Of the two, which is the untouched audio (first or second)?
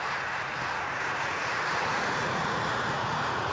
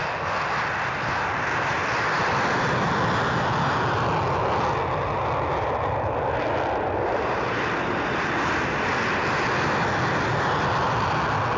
second